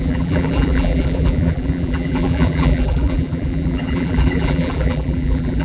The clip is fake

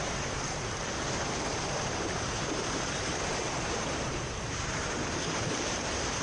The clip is fake